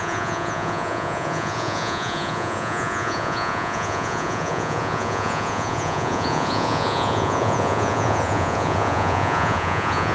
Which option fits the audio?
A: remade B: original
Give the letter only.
A